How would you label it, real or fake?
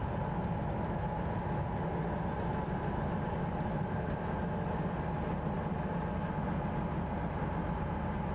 real